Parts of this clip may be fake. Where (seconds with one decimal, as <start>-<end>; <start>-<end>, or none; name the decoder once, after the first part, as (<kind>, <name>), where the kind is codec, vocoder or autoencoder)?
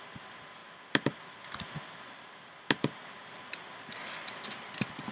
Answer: none